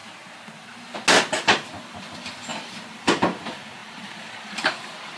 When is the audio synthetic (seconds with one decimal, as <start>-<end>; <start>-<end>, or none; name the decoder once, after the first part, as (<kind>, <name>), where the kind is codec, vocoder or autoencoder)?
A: 1.4-5.2 (vocoder, BigVGAN v2)